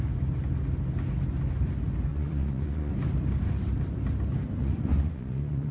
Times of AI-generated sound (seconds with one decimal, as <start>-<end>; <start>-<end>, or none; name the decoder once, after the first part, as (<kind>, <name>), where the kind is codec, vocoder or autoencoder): 2.1-2.9 (vocoder, Vocos); 4.6-5.7